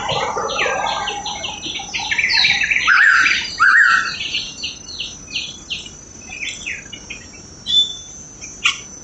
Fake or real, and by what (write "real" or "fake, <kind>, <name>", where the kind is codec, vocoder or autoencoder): real